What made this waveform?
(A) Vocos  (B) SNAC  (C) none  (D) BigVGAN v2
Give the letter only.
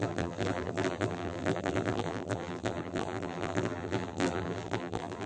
D